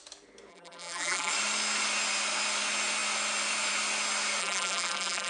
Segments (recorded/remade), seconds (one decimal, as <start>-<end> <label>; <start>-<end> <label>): 0.0-0.5 recorded; 0.5-1.3 remade; 1.3-4.4 recorded; 4.4-5.3 remade